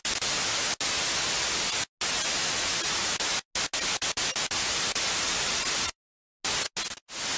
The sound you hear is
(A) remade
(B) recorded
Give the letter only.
B